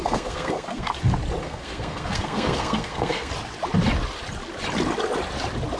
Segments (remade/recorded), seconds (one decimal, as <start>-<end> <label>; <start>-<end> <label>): 0.0-0.9 remade; 0.9-1.4 recorded; 1.4-3.3 remade; 3.3-5.8 recorded